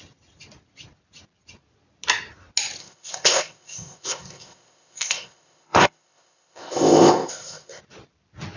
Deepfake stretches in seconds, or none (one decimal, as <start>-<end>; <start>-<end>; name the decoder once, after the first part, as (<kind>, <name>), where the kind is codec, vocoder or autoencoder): 2.8-7.8 (codec, ZipCodec)

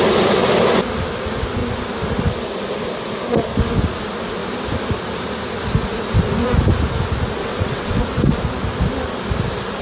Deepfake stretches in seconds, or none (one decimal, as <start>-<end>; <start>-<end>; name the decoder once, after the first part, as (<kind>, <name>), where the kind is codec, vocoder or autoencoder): 7.4-8.0 (vocoder, WaveNeXt)

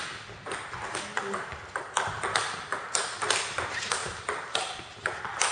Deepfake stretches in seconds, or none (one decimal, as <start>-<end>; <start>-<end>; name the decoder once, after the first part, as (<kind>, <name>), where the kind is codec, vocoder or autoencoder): none

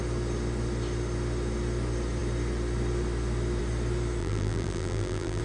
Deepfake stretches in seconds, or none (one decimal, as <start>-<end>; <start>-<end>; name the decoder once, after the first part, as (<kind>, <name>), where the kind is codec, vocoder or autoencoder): 4.2-5.4 (vocoder, BigVGAN v2)

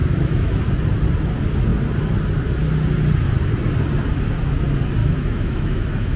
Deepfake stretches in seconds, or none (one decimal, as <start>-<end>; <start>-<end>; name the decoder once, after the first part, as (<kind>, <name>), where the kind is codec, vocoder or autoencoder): 0.0-0.6 (autoencoder, DAC-VAE); 5.0-6.2